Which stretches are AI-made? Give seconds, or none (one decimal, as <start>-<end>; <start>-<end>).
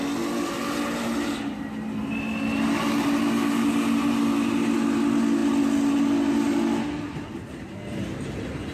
none